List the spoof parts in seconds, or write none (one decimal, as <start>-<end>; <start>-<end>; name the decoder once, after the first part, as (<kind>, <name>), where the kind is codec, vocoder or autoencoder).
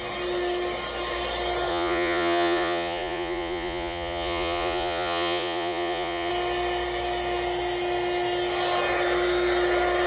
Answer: 1.7-6.3 (vocoder, Vocos)